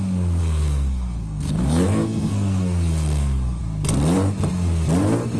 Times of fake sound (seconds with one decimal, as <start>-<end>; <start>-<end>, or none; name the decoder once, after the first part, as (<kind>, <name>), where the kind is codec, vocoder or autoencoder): 0.4-3.6 (codec, SNAC)